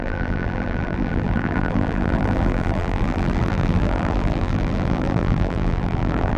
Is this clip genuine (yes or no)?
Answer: no